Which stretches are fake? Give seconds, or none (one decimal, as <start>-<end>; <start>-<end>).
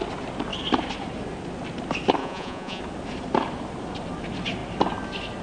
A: 2.2-2.8